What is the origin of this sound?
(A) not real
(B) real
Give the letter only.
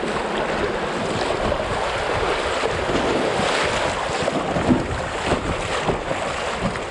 B